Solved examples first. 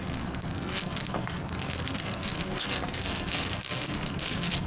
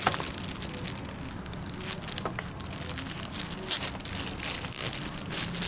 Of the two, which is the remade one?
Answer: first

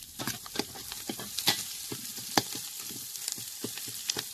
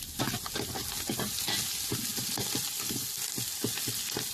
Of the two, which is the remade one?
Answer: first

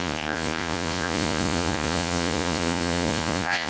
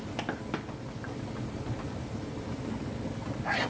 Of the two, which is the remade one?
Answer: first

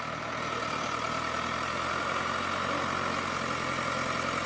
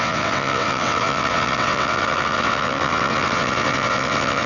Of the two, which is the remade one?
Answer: second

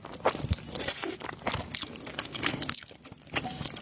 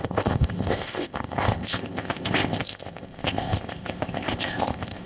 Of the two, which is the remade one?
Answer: second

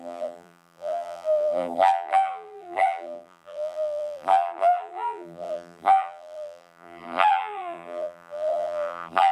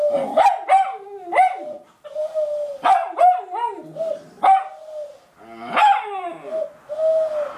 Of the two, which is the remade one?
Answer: first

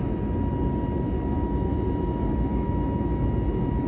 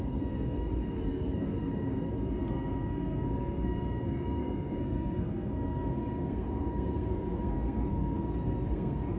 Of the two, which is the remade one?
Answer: second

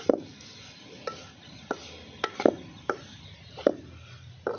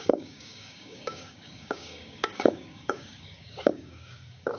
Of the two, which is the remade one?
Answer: second